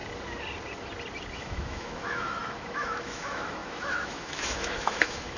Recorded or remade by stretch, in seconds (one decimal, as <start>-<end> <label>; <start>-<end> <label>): 0.0-1.3 recorded; 1.3-5.4 remade